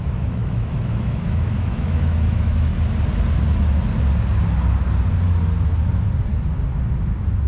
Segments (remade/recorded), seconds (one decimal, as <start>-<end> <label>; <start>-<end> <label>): 0.0-2.7 remade; 2.7-7.5 recorded